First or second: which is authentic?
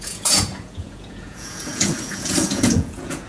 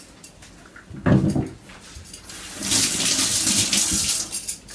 second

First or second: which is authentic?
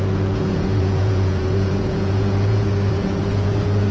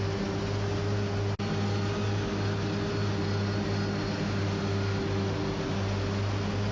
second